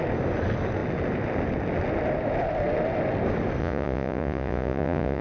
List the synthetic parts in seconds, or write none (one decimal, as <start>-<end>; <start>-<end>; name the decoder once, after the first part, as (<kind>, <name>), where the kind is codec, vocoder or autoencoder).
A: 3.6-5.2 (vocoder, Vocos)